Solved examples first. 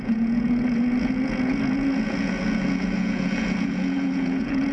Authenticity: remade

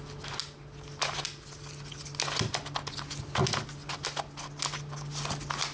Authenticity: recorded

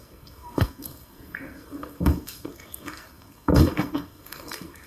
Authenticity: remade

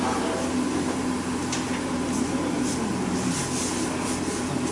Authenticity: recorded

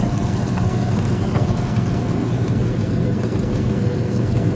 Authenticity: remade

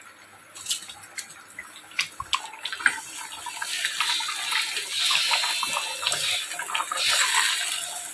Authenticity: recorded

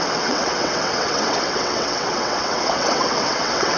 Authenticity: remade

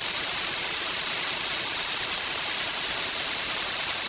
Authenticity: remade